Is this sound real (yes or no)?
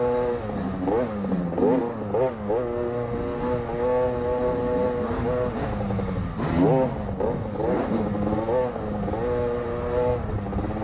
yes